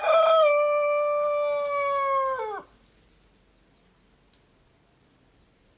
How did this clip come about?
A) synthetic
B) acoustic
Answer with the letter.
B